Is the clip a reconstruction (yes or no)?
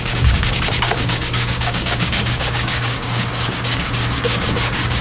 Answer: yes